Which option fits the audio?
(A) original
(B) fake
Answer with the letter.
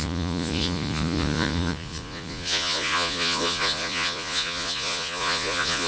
B